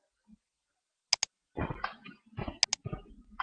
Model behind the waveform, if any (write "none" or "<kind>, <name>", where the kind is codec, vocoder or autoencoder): none